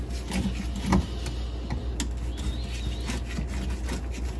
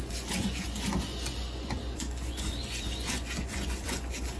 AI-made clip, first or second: second